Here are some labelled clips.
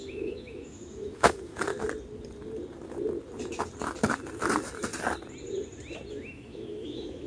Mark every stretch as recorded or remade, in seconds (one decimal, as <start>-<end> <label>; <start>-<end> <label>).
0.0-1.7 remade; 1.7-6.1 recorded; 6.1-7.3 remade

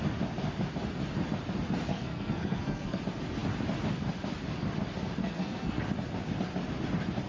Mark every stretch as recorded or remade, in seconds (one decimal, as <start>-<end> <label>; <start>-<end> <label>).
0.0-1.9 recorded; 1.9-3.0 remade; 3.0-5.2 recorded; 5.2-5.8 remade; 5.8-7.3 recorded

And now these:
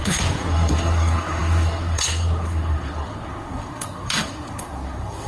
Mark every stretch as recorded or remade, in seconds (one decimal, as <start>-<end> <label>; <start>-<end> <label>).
0.0-5.3 remade

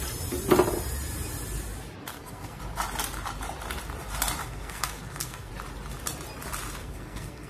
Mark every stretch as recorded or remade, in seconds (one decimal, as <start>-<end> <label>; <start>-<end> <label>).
0.0-2.1 recorded; 2.1-2.6 remade; 2.6-4.4 recorded; 4.4-5.5 remade; 5.5-6.8 recorded; 6.8-7.5 remade

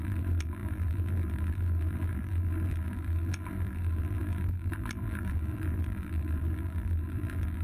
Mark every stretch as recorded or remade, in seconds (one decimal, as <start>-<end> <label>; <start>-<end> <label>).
0.0-7.6 remade

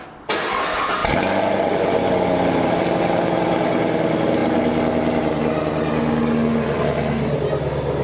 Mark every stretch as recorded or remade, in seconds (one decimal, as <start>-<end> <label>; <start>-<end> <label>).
0.0-8.0 recorded

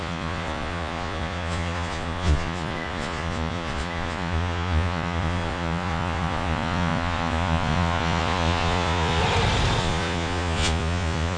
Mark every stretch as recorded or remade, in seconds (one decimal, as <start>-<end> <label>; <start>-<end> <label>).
0.0-9.2 remade; 9.2-9.8 recorded; 9.8-11.4 remade